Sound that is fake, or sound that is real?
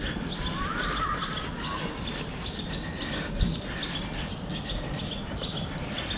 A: real